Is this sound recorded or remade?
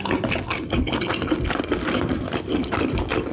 recorded